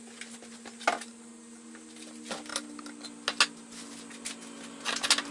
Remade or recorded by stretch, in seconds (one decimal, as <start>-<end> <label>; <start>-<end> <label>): 0.0-5.3 recorded